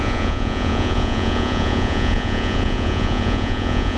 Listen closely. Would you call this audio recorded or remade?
remade